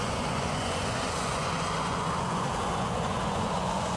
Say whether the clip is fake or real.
fake